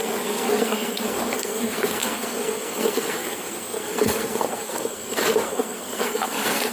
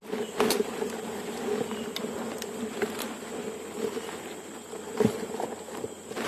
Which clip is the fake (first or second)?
first